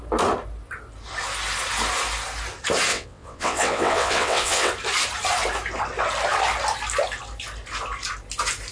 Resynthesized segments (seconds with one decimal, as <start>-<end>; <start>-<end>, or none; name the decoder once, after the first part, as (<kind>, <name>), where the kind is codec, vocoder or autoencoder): 2.9-4.7 (vocoder, WaveNeXt)